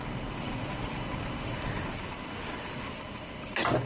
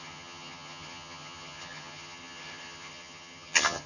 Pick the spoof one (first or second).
second